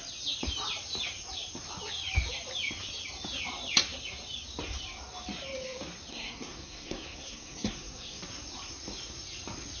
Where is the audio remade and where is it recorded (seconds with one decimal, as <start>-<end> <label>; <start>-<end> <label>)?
0.0-6.1 recorded; 6.1-8.2 remade; 8.2-9.8 recorded